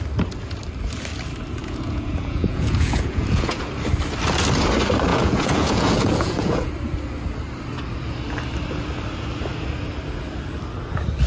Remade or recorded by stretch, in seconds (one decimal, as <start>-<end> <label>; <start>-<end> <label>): 0.0-1.6 recorded; 1.6-3.6 remade; 3.6-5.1 recorded; 5.1-6.7 remade; 6.7-11.3 recorded

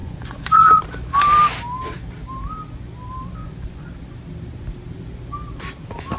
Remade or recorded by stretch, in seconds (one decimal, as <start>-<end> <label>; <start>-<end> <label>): 0.0-0.8 remade; 0.8-3.4 recorded; 3.4-3.9 remade; 3.9-6.2 recorded

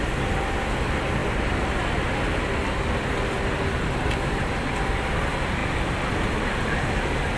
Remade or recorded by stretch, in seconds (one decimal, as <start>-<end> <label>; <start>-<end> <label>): 0.0-7.4 recorded

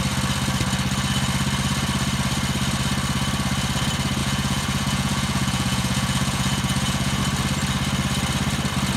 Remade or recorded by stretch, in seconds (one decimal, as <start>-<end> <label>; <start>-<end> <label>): 0.0-4.2 recorded; 4.2-7.2 remade; 7.2-9.0 recorded